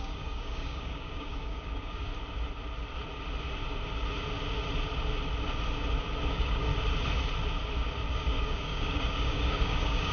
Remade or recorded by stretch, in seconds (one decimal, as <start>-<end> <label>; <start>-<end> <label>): 0.0-2.1 remade; 2.1-6.3 recorded; 6.3-6.7 remade; 6.7-8.1 recorded; 8.1-10.1 remade